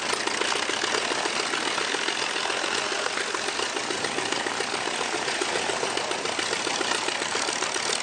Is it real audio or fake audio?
real